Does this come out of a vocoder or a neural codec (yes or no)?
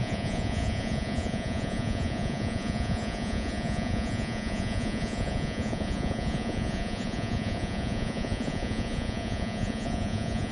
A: yes